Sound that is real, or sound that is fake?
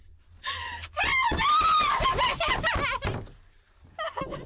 real